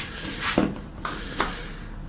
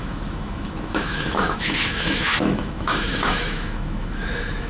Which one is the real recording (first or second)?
first